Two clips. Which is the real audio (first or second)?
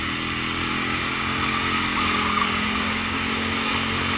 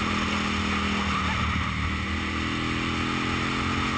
second